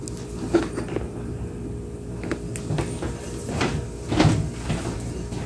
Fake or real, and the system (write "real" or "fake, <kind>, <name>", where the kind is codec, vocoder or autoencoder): real